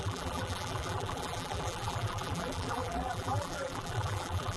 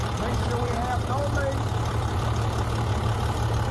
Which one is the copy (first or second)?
first